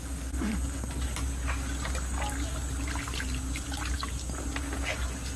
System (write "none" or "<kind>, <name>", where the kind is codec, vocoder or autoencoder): none